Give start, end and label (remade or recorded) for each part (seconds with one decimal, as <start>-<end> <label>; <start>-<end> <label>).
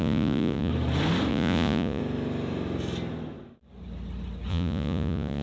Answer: 0.0-0.7 remade; 0.7-1.3 recorded; 1.3-2.0 remade; 2.0-4.5 recorded; 4.5-5.4 remade